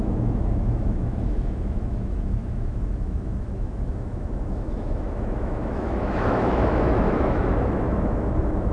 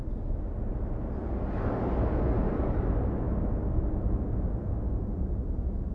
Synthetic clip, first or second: first